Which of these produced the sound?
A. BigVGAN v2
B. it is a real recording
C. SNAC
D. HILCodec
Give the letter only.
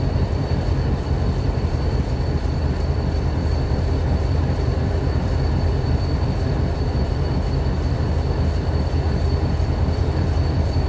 A